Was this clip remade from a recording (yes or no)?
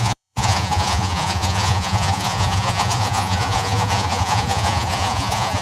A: yes